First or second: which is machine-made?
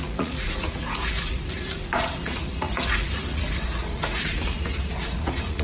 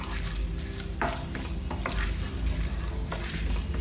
first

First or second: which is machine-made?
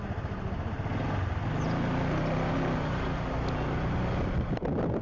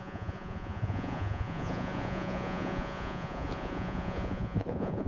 second